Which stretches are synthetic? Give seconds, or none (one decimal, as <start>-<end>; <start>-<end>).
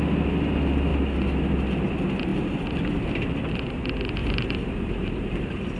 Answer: 4.2-5.8